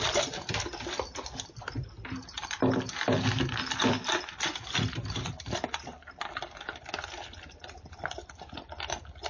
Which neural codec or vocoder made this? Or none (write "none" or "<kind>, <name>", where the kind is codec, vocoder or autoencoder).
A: none